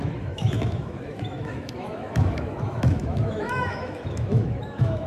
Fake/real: fake